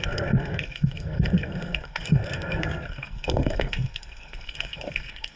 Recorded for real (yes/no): no